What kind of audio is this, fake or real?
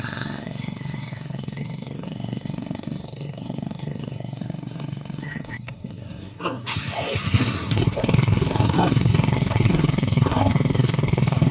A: fake